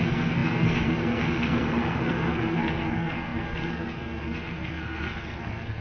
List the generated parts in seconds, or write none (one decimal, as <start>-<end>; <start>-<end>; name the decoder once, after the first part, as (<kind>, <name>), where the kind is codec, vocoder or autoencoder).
0.0-5.8 (codec, SNAC)